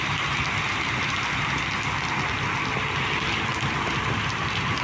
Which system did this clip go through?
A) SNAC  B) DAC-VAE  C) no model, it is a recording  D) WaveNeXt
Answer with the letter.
C